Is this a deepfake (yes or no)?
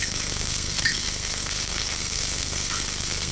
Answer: yes